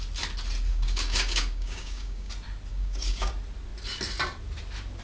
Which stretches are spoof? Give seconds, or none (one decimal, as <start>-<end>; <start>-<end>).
0.7-2.3; 2.7-3.3

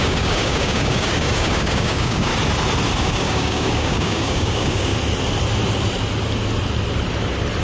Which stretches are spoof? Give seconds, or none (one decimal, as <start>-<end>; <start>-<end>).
0.0-2.3; 3.0-4.9

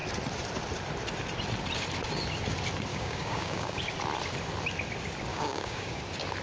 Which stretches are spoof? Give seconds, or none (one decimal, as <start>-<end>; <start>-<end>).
2.9-3.8; 5.3-6.0

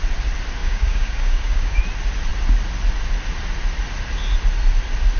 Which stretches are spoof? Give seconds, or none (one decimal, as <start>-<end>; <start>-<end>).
0.6-1.8

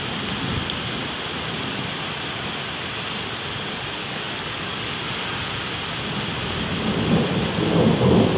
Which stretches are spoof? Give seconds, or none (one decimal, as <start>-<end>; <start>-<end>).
4.0-5.0

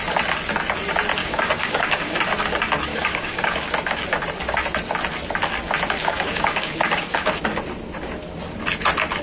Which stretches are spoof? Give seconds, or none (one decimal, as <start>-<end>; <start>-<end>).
1.2-2.2; 2.9-3.7; 6.0-7.3

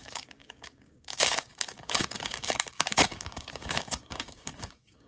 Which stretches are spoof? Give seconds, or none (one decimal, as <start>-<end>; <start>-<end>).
0.0-5.1

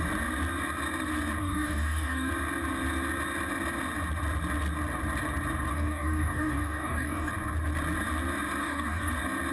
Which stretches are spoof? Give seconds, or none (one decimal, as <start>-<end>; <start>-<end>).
1.4-2.3; 5.7-7.3; 8.6-9.1